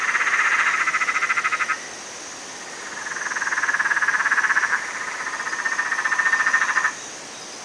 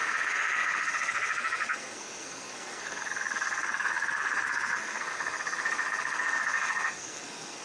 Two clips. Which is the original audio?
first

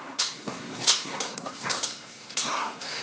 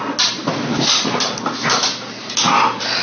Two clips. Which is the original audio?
second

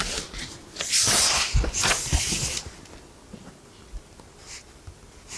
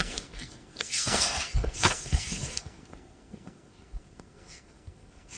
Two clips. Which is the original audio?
first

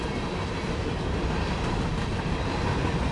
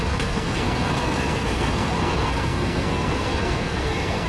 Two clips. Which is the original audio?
first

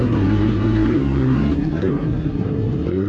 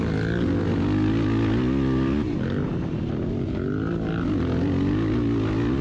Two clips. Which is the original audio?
second